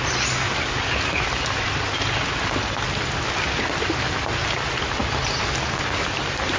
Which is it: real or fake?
real